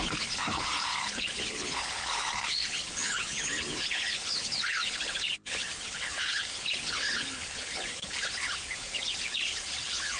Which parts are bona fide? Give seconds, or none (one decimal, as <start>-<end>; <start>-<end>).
none